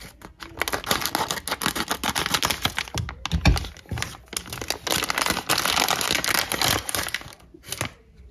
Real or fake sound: real